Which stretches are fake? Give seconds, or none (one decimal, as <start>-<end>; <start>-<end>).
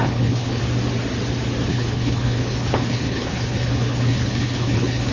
0.0-0.6; 1.7-5.1